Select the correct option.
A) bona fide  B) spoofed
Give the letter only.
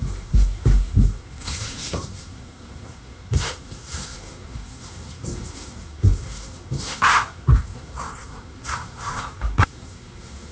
B